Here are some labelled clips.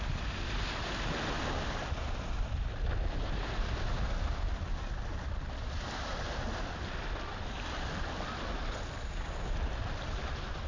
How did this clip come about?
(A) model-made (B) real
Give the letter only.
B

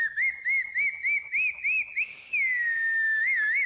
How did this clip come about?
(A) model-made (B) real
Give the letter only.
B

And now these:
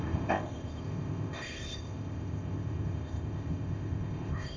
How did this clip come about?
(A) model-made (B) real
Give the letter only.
A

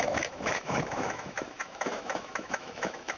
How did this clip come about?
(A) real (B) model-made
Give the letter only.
B